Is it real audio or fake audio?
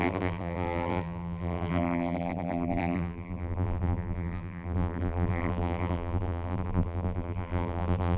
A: fake